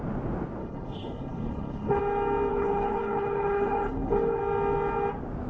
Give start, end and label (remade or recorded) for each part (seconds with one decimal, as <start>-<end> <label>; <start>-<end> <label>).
0.0-0.6 recorded; 0.6-2.0 remade; 2.0-2.5 recorded; 2.5-4.4 remade; 4.4-5.5 recorded

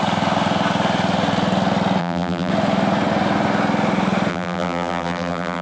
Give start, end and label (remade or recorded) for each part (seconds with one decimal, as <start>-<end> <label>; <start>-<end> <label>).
0.0-2.0 recorded; 2.0-2.5 remade; 2.5-4.3 recorded; 4.3-5.6 remade

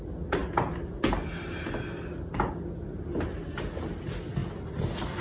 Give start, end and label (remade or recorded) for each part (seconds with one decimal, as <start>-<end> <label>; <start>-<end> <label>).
0.0-5.2 recorded

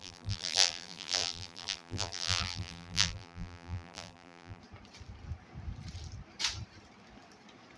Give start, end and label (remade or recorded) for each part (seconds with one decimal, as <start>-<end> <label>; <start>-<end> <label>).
0.0-4.6 remade; 4.6-7.8 recorded

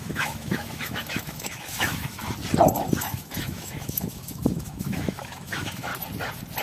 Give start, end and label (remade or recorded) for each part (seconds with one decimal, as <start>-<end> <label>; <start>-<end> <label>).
0.0-2.2 remade; 2.2-3.0 recorded; 3.0-5.9 remade; 5.9-6.6 recorded

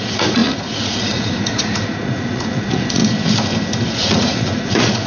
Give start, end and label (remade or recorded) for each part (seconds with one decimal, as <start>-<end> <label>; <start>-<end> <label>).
0.0-3.0 remade; 3.0-4.0 recorded; 4.0-5.1 remade

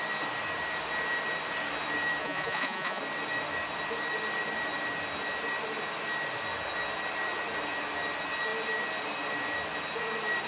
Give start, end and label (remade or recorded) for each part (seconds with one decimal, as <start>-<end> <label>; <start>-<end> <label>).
0.0-2.2 recorded; 2.2-3.0 remade; 3.0-10.5 recorded